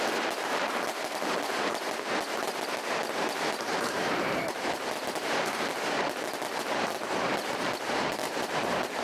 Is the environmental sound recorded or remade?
remade